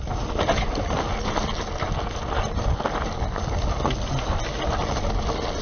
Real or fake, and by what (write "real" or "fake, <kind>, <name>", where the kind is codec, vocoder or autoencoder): real